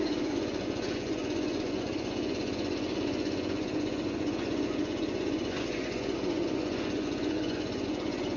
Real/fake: fake